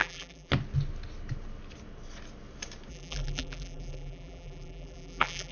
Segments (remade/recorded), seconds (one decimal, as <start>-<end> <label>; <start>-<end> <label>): 0.0-0.5 remade; 0.5-2.9 recorded; 2.9-5.5 remade